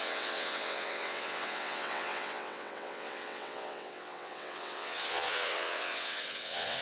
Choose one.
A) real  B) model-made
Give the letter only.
B